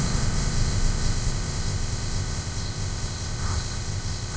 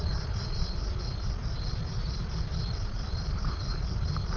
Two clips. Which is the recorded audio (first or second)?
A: second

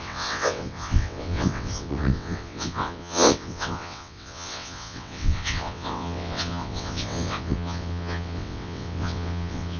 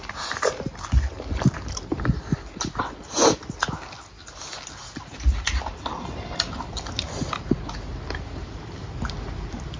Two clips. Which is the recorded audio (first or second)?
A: second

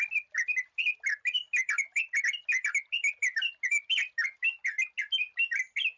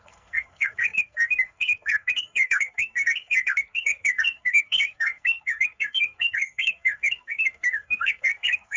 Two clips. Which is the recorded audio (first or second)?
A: first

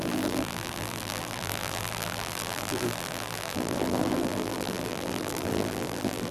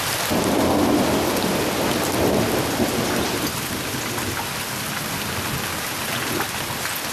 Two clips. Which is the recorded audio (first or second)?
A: second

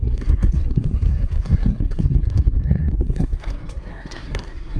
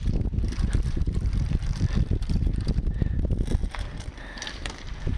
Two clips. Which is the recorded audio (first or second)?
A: second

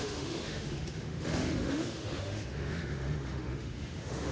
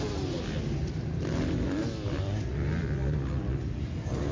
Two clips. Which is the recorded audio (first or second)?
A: second